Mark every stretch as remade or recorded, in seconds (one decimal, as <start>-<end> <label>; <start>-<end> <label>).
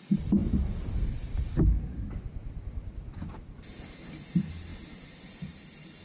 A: 0.0-6.0 recorded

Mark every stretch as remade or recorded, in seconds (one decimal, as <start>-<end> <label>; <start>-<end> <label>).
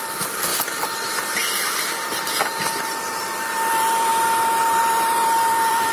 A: 0.0-0.5 remade; 0.5-2.8 recorded; 2.8-4.1 remade; 4.1-4.8 recorded; 4.8-5.9 remade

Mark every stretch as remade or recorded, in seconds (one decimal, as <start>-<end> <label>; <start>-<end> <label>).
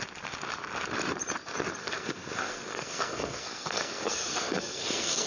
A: 0.0-1.8 recorded; 1.8-5.3 remade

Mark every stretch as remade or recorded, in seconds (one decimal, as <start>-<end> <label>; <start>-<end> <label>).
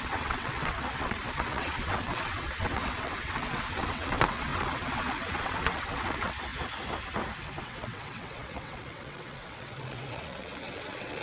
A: 0.0-6.5 remade; 6.5-7.6 recorded; 7.6-11.2 remade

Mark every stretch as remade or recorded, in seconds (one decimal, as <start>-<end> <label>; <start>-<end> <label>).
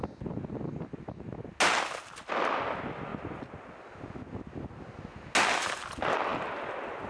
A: 0.0-7.1 recorded